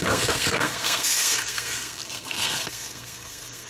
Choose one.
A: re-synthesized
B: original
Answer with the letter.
A